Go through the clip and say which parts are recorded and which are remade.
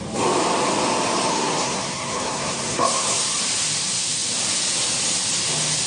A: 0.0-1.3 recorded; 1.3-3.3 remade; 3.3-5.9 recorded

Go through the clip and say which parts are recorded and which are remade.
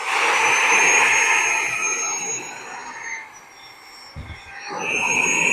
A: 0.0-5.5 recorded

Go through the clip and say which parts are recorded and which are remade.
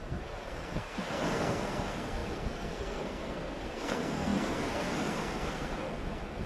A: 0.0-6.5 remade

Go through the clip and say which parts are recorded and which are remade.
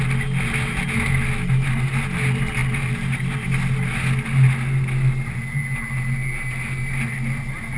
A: 0.0-7.8 recorded